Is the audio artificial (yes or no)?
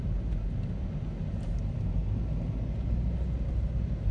no